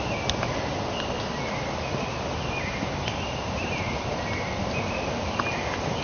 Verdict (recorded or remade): recorded